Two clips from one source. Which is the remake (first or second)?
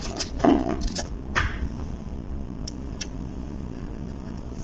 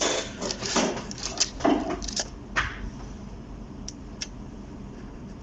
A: first